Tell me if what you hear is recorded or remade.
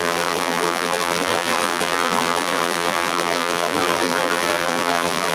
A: remade